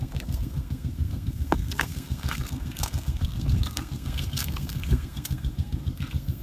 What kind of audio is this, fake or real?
fake